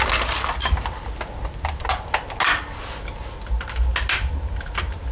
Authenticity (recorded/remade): recorded